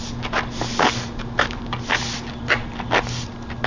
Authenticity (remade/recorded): recorded